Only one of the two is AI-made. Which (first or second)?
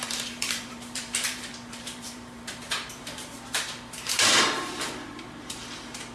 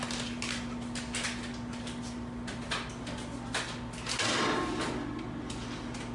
first